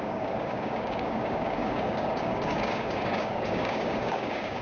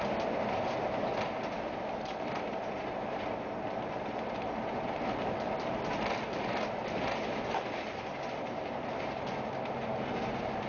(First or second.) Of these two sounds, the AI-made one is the first